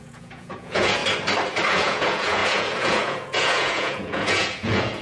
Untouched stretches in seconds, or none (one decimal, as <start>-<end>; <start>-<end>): 1.0-1.7

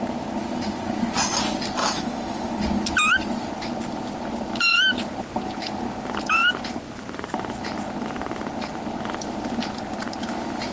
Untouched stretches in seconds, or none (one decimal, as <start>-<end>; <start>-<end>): 0.0-1.8; 2.5-10.7

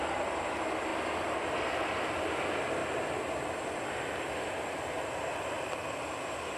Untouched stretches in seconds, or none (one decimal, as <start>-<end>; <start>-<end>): 0.0-6.6

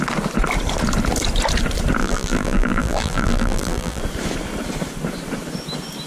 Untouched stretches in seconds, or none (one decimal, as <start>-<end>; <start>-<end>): 0.0-2.0; 4.0-6.1

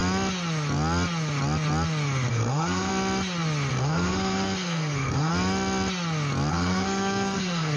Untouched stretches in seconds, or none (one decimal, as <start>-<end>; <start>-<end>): 0.0-2.3; 2.9-3.7; 5.3-6.5

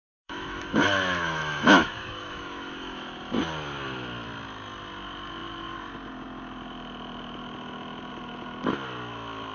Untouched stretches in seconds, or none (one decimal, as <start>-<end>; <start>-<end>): 3.4-9.5

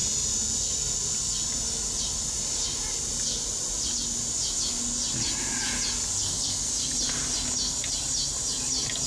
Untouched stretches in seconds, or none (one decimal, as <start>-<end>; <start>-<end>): 0.0-6.2; 6.7-9.1

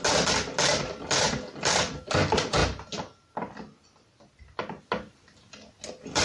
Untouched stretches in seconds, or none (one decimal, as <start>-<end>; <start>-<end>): 0.0-6.2